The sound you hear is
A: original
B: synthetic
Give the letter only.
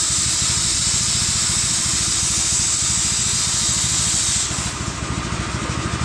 A